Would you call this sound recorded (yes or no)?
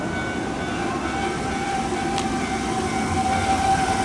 yes